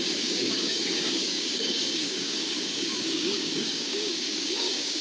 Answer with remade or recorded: remade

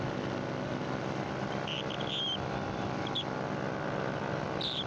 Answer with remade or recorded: recorded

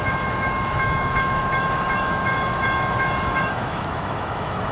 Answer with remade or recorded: remade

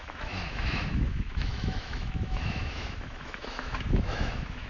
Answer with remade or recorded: remade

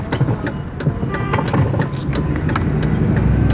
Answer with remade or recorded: recorded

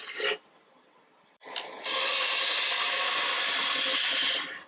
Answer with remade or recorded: remade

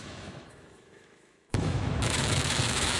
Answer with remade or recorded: remade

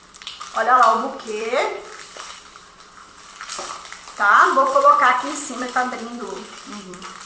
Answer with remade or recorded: remade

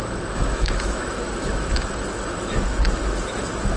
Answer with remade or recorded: remade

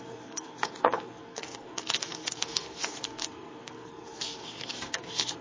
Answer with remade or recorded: remade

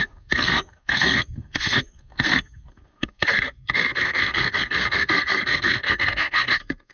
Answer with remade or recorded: remade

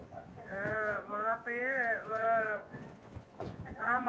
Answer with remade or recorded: remade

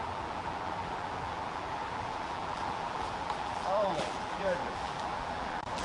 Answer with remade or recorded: remade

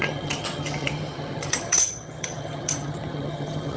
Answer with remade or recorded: remade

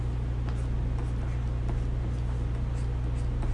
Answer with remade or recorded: recorded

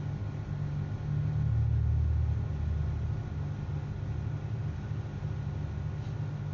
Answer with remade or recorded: recorded